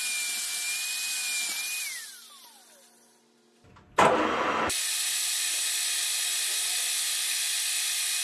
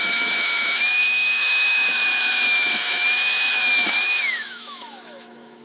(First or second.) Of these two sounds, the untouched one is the first